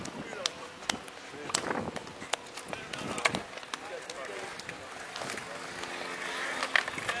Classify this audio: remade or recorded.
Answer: recorded